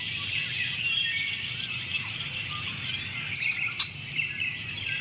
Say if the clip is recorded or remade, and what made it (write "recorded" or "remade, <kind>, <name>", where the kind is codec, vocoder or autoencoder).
remade, vocoder, BigVGAN v2